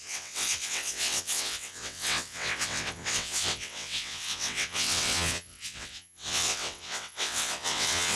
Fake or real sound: fake